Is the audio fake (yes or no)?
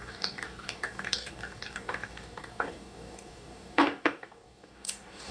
yes